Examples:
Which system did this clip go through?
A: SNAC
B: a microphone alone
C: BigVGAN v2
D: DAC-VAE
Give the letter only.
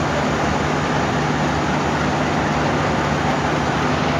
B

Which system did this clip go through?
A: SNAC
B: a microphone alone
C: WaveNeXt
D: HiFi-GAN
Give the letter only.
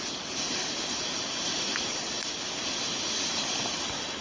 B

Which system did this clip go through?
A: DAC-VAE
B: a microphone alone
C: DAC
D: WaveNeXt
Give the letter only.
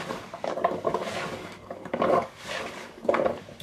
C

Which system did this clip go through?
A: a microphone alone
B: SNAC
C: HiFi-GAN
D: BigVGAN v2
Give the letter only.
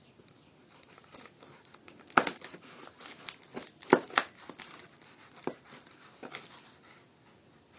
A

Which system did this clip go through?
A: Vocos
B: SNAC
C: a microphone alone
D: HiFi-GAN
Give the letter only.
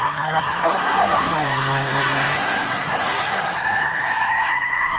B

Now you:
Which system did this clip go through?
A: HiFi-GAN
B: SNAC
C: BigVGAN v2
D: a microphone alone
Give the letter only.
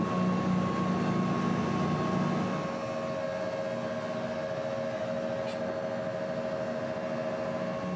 D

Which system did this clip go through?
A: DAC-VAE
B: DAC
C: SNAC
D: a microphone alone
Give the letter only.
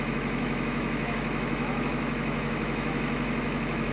A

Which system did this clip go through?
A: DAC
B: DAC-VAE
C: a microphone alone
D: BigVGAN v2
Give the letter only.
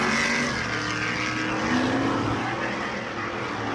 C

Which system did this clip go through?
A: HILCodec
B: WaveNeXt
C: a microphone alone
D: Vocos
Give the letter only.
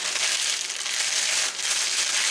C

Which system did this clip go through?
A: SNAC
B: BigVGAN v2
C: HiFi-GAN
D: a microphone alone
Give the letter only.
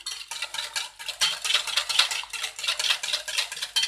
D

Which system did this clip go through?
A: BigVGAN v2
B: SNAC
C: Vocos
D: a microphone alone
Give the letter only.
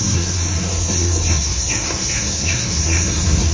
B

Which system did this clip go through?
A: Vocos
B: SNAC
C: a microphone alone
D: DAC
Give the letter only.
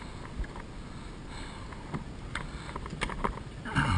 C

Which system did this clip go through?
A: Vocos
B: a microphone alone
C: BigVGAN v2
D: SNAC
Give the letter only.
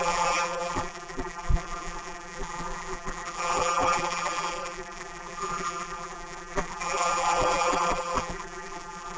C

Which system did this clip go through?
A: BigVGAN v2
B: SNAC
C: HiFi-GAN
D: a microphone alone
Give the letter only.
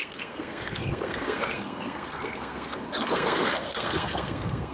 B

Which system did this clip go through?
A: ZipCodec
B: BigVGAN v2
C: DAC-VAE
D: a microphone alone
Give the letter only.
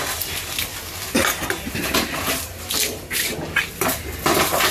D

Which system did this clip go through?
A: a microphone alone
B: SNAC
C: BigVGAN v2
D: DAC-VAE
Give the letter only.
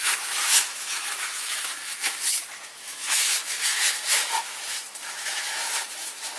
D